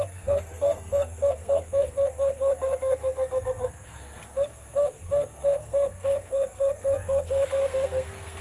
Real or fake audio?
fake